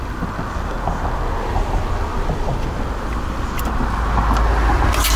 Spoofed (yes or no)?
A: no